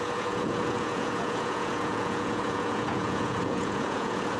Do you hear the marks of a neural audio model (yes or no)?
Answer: yes